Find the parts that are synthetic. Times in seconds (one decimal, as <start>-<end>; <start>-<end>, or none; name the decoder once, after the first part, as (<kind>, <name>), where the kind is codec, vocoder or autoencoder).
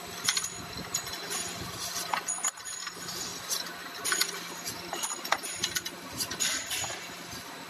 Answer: none